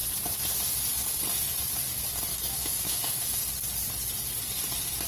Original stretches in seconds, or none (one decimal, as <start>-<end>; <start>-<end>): 0.0-2.3; 3.4-5.1